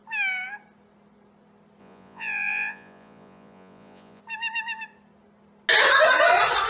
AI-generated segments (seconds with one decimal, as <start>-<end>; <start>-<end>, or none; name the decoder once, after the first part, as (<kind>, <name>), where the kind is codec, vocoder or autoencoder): 1.8-4.2 (vocoder, Vocos)